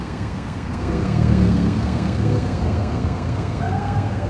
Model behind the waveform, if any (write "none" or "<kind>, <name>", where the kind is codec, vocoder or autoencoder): codec, SNAC